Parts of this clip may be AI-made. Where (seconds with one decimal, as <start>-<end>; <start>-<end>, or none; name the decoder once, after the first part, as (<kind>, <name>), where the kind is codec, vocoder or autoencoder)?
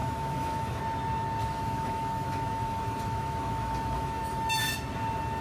0.0-0.8 (autoencoder, DAC-VAE); 1.4-4.6